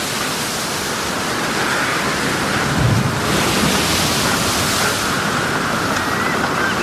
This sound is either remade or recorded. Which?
recorded